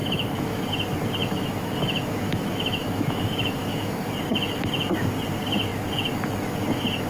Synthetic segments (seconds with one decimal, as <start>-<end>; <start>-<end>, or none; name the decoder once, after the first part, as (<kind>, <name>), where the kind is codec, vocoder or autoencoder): 0.0-0.6 (autoencoder, DAC-VAE); 1.2-4.1